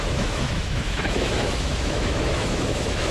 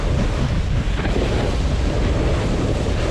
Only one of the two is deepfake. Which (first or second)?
first